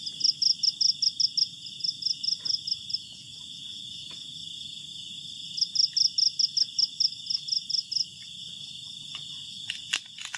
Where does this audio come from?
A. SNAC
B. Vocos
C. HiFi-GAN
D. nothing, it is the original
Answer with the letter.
D